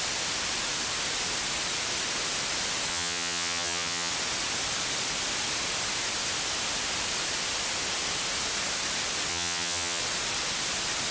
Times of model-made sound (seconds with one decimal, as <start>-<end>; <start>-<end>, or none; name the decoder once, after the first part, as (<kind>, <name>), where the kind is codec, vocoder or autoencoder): 2.9-4.1 (vocoder, HiFi-GAN); 9.3-10.0